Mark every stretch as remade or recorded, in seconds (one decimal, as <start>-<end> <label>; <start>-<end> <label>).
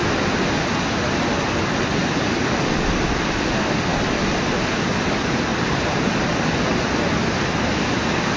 0.0-8.4 recorded